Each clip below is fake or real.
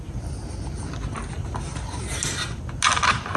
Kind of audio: real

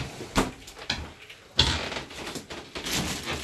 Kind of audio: real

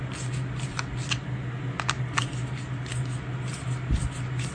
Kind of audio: real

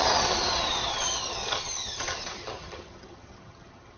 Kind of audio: fake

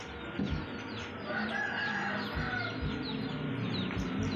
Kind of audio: real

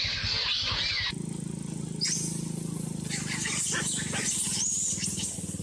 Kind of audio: real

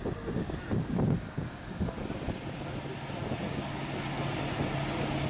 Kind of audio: real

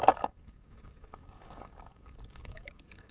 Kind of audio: fake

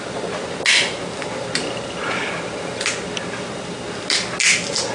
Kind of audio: real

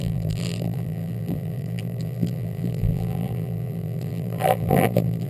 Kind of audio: fake